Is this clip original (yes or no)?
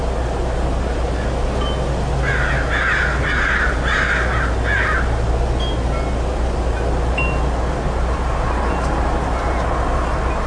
yes